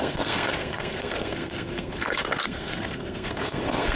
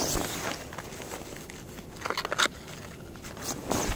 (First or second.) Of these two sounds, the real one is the second